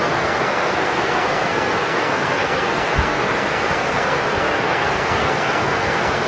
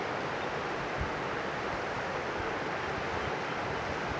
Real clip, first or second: second